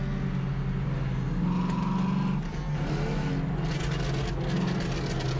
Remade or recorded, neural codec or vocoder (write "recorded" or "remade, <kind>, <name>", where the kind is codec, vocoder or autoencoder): recorded